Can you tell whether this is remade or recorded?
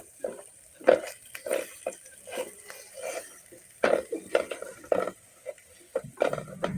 remade